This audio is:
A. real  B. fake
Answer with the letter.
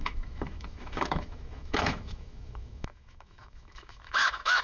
B